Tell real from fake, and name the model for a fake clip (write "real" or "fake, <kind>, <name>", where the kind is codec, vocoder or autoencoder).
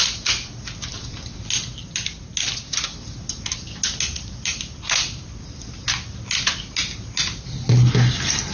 real